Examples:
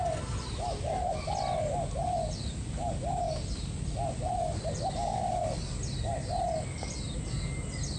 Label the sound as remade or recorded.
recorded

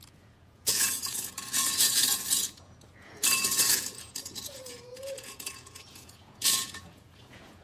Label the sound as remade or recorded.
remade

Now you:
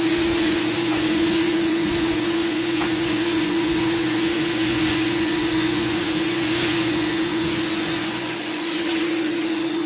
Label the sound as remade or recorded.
remade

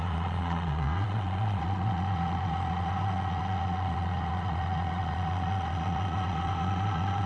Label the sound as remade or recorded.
remade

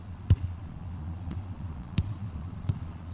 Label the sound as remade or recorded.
remade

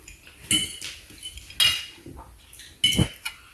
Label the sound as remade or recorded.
recorded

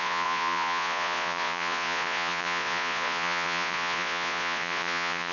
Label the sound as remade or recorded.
remade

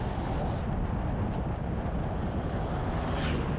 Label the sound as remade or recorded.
recorded